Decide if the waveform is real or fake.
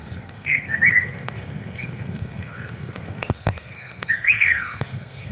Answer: fake